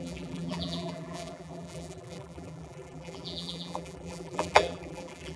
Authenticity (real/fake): fake